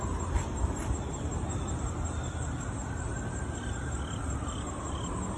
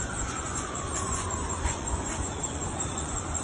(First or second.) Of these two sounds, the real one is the first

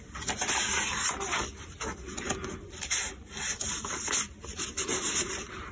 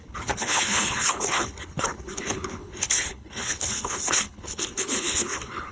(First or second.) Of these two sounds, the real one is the first